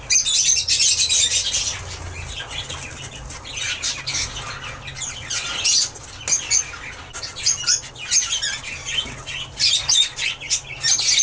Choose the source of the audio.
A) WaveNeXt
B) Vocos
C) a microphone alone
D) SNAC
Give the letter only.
C